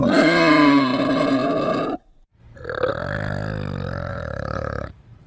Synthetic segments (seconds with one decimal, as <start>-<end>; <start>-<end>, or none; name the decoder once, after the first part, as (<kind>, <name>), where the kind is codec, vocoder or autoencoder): 4.1-5.3 (vocoder, Vocos)